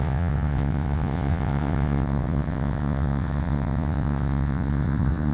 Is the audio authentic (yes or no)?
no